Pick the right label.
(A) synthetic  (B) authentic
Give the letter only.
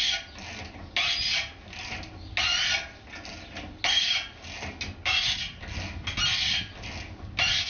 B